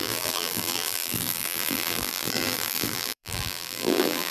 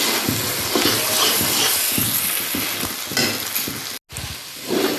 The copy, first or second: first